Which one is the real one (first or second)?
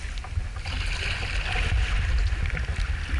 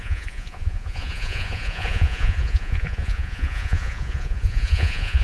first